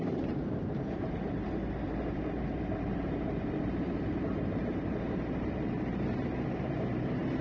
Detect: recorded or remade remade